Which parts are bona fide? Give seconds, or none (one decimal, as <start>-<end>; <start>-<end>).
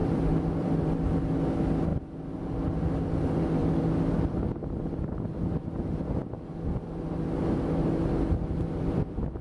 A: 1.0-3.6; 4.4-9.4